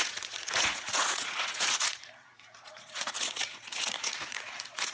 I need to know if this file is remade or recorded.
remade